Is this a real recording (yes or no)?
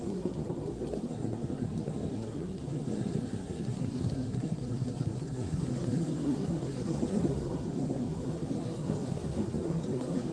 no